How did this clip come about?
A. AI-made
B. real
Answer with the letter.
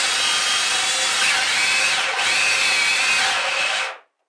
B